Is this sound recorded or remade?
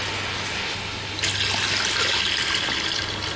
recorded